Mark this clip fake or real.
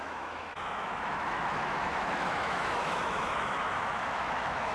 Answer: fake